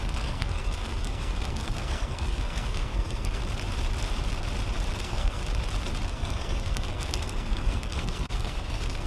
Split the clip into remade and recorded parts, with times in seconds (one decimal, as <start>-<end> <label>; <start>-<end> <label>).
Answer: 0.0-3.4 remade; 3.4-5.0 recorded; 5.0-5.4 remade; 5.4-6.1 recorded; 6.1-9.1 remade